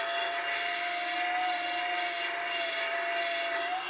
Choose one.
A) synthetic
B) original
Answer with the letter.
B